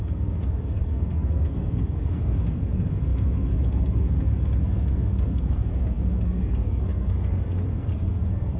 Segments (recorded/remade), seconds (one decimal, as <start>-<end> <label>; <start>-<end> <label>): 0.0-8.6 remade